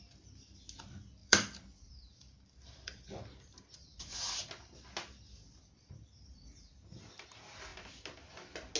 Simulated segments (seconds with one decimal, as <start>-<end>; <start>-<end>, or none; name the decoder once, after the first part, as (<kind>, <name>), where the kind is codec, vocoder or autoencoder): 1.2-3.0 (vocoder, BigVGAN v2); 3.9-4.5

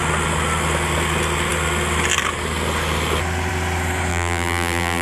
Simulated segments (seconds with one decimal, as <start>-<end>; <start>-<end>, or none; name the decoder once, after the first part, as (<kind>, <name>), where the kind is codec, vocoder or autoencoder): 4.1-5.0 (vocoder, BigVGAN v2)

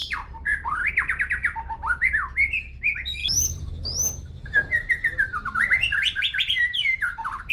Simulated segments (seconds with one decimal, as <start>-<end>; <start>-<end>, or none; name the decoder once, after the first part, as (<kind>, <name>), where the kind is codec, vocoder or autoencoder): 0.0-0.9 (vocoder, BigVGAN v2); 1.4-2.1; 3.2-3.7; 4.8-7.5

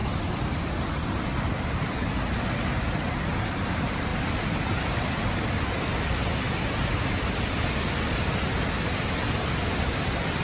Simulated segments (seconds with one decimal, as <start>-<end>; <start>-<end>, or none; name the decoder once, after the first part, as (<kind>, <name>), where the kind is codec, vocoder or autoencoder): 0.0-0.7 (vocoder, BigVGAN v2)

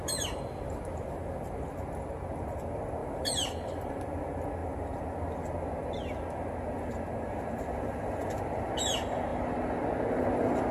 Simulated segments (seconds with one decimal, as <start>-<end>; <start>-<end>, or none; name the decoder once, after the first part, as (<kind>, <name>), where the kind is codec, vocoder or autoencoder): 0.0-1.7 (vocoder, BigVGAN v2); 3.0-4.0

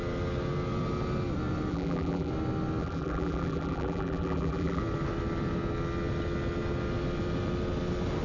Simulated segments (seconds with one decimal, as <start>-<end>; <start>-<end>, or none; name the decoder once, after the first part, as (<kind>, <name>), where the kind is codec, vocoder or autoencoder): 1.7-2.3 (vocoder, BigVGAN v2); 2.8-4.8

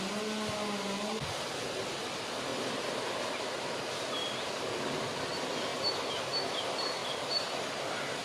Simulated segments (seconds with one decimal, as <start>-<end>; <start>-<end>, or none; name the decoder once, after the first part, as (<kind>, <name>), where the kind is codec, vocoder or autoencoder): 2.5-3.0 (vocoder, BigVGAN v2); 4.2-4.8; 5.7-6.4; 7.0-7.7

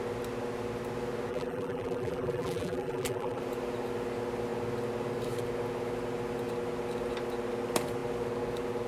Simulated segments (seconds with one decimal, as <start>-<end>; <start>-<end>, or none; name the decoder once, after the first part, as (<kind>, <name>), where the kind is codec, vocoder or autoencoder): 1.3-3.4 (vocoder, BigVGAN v2)